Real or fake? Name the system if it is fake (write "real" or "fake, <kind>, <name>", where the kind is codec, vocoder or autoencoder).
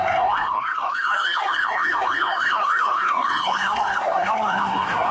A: fake, codec, SNAC